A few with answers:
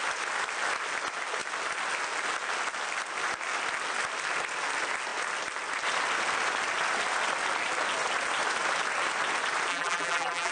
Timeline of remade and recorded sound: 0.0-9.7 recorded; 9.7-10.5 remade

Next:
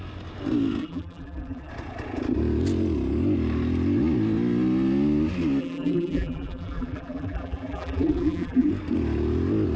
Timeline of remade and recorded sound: 0.0-0.8 recorded; 0.8-1.7 remade; 1.7-5.6 recorded; 5.6-8.7 remade; 8.7-9.8 recorded

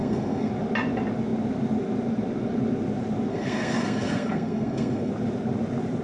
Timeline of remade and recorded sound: 0.0-0.5 remade; 0.5-3.3 recorded; 3.3-5.1 remade; 5.1-6.0 recorded

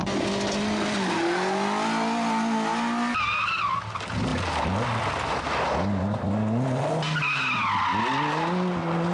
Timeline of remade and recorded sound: 0.0-9.1 recorded

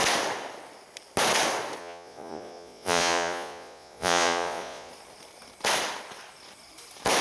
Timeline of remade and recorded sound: 0.0-1.8 recorded; 1.8-4.9 remade; 4.9-7.2 recorded

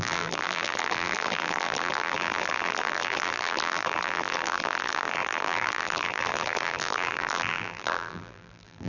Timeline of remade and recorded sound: 0.0-8.9 remade